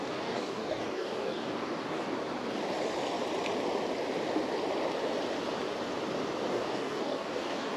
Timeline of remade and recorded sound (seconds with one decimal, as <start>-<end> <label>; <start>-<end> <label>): 0.0-2.2 remade; 2.2-6.5 recorded; 6.5-7.8 remade

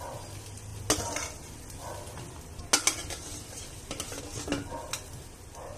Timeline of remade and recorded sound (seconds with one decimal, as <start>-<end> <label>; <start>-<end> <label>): 0.0-5.8 recorded

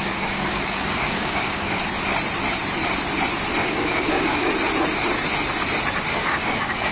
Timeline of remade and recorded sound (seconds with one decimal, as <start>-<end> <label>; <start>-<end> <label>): 0.0-1.8 remade; 1.8-3.6 recorded; 3.6-4.5 remade; 4.5-6.1 recorded; 6.1-6.9 remade

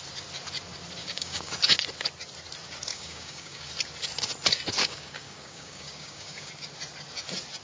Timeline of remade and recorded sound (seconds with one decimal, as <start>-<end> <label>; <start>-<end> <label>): 0.0-1.0 recorded; 1.0-1.5 remade; 1.5-2.9 recorded; 2.9-3.7 remade; 3.7-4.8 recorded; 4.8-6.5 remade; 6.5-7.6 recorded

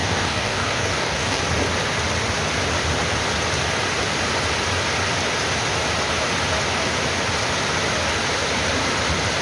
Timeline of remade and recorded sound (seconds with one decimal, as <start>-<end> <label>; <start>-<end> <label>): 0.0-1.4 remade; 1.4-9.4 recorded

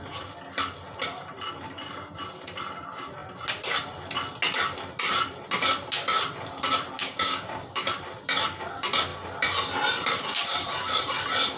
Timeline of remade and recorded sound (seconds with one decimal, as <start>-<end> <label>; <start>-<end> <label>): 0.0-7.0 recorded; 7.0-7.9 remade; 7.9-11.6 recorded

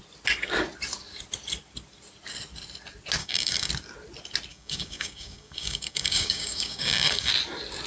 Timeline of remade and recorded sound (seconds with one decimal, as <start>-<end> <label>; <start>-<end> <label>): 0.0-3.2 recorded; 3.2-3.7 remade; 3.7-4.5 recorded; 4.5-7.3 remade; 7.3-7.9 recorded

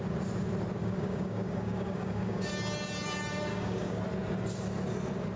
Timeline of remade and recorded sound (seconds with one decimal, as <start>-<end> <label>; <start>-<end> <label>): 0.0-0.8 recorded; 0.8-2.5 remade; 2.5-3.5 recorded; 3.5-4.0 remade; 4.0-5.4 recorded